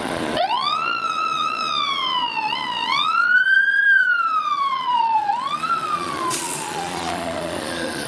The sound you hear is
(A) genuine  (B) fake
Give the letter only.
B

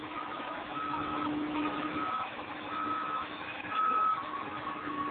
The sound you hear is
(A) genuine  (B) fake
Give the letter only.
B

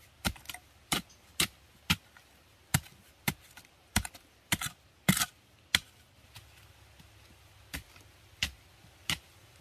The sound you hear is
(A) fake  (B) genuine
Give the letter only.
B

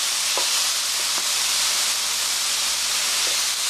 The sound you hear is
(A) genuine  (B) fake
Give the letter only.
A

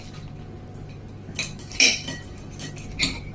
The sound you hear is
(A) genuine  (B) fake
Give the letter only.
A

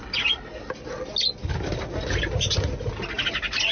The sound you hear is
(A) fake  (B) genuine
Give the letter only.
B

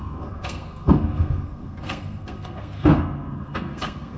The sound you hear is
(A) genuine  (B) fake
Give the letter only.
B